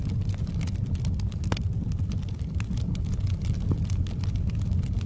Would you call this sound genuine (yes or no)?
yes